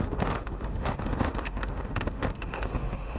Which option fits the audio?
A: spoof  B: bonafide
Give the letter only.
A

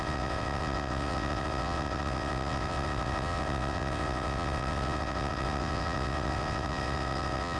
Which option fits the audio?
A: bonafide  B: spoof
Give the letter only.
B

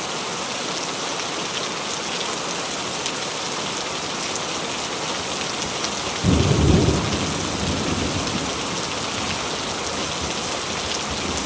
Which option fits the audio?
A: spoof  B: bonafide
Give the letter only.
B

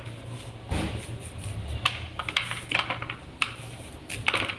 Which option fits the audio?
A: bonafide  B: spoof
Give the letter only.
A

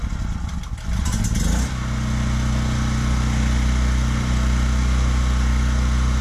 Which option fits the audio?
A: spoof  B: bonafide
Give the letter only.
B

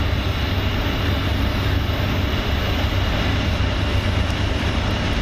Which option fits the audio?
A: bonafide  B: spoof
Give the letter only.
A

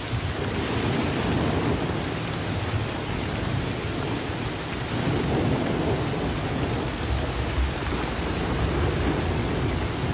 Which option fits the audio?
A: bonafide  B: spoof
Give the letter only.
A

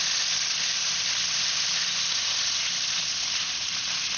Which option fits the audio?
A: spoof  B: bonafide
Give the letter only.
B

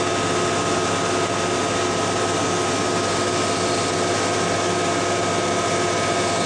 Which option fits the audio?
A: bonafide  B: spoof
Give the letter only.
A